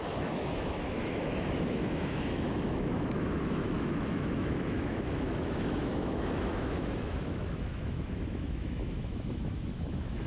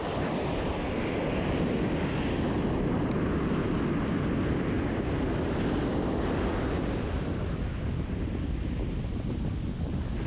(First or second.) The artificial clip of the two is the first